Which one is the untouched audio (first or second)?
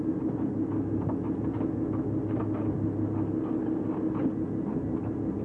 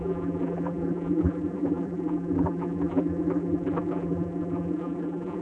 first